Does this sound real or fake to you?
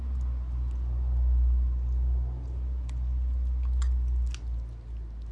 real